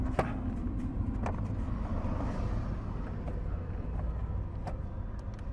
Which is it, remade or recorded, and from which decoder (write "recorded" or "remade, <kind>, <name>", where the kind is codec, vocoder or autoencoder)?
recorded